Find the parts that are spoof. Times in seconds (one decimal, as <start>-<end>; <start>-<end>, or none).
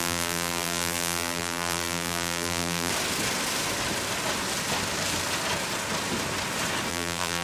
0.0-2.9; 6.9-7.4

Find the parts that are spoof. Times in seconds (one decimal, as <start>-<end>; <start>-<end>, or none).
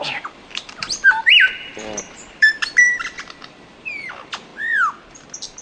0.0-4.5; 5.1-5.6